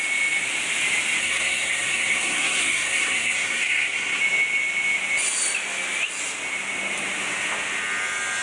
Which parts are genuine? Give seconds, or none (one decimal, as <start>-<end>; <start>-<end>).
0.0-1.2; 4.2-8.4